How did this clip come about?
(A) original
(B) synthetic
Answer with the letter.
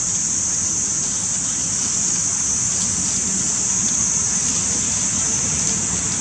A